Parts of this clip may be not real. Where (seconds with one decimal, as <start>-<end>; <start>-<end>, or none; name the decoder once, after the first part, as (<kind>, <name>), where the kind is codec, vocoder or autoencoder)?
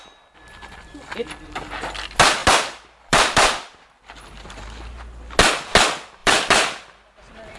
2.4-4.5 (vocoder, BigVGAN v2); 6.2-7.6